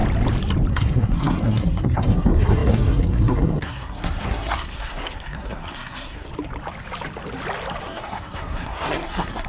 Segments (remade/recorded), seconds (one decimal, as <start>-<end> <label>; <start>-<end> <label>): 0.0-0.7 recorded; 0.7-6.3 remade; 6.3-7.8 recorded; 7.8-9.5 remade